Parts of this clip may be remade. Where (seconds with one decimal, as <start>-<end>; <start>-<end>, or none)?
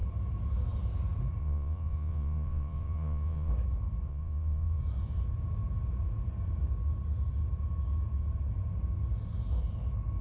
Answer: 1.4-3.5; 4.1-4.8